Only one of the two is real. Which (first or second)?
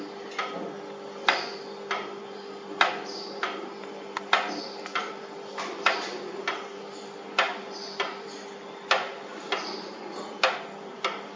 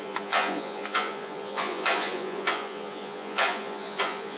first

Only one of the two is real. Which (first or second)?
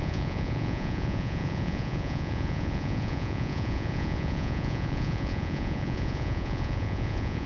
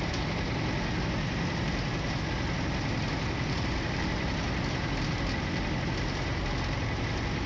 second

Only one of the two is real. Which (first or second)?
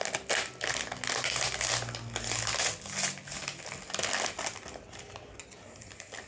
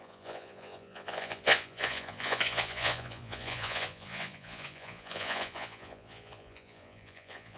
first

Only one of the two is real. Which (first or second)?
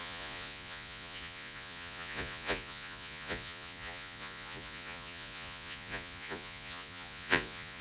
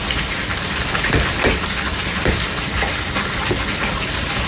second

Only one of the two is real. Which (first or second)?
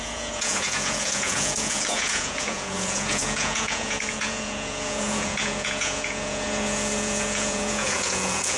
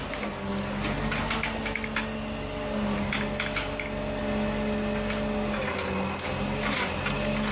second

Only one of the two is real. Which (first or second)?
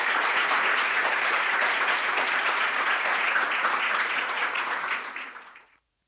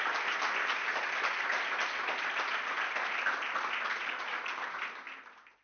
second